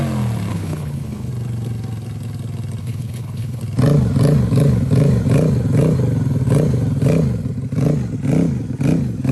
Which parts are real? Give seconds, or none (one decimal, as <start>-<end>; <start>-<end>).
0.0-0.5; 1.3-2.8; 3.6-9.3